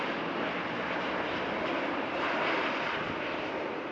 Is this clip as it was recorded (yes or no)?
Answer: yes